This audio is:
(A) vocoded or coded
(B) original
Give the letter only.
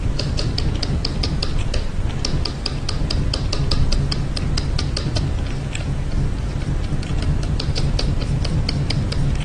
A